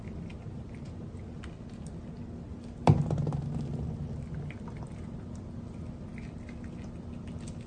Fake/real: real